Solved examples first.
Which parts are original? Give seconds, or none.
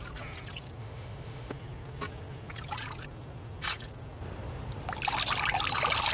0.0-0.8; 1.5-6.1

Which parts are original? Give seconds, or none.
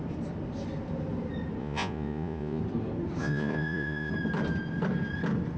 0.0-1.6; 2.6-3.2; 4.1-5.6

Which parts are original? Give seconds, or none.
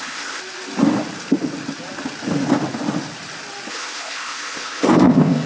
0.4-3.7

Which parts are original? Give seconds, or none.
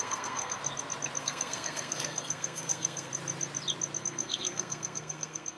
0.6-1.2; 3.1-4.0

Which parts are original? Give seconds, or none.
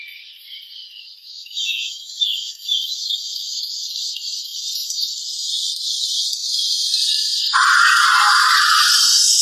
0.0-1.2; 3.5-9.4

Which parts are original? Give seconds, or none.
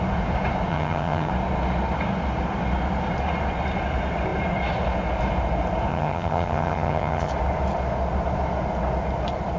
0.0-0.7; 1.3-5.9; 7.3-9.6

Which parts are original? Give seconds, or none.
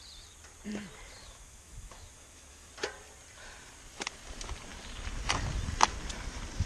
0.0-1.2; 2.7-6.7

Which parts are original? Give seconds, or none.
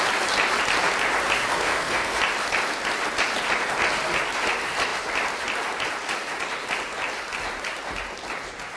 0.0-1.5; 2.2-8.8